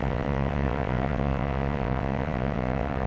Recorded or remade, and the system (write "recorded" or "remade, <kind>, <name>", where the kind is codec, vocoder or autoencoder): remade, vocoder, WaveNeXt